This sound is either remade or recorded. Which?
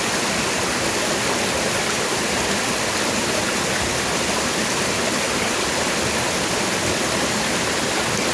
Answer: recorded